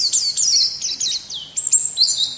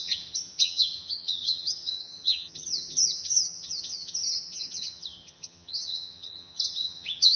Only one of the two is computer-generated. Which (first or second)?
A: second